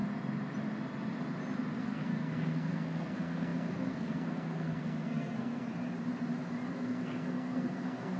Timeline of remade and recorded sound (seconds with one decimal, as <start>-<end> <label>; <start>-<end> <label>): 0.0-1.8 recorded; 1.8-5.7 remade; 5.7-6.7 recorded; 6.7-8.2 remade